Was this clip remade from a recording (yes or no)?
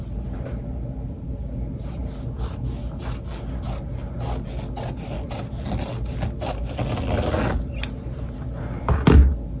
no